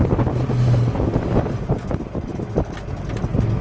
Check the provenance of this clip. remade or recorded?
recorded